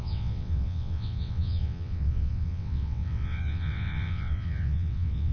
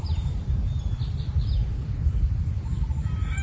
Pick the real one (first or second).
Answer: second